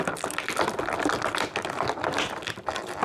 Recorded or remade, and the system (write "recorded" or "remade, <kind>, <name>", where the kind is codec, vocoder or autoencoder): recorded